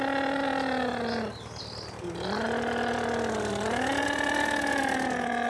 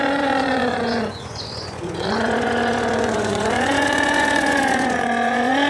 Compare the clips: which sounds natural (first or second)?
first